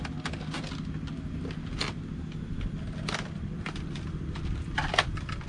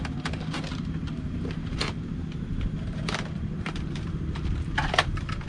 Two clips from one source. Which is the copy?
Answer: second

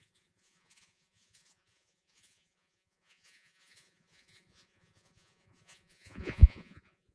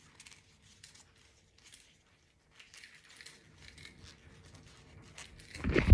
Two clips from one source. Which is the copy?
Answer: first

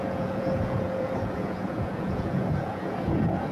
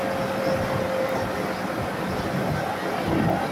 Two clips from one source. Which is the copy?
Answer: first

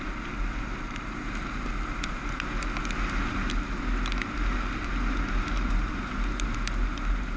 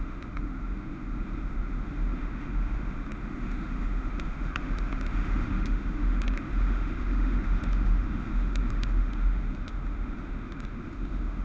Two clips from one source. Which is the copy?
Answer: second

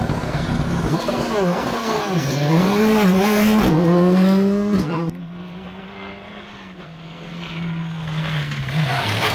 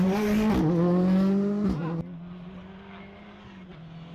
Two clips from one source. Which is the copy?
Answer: first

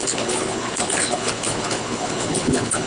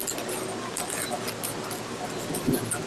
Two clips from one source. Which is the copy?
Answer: first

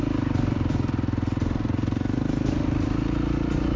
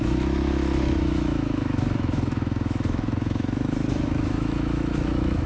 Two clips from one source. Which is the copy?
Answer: second